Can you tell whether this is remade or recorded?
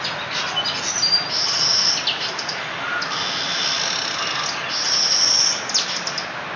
recorded